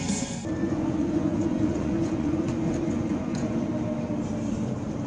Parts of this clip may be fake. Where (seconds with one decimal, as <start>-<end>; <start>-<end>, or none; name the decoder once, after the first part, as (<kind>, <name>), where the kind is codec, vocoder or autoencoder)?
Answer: 0.6-3.7 (vocoder, Vocos)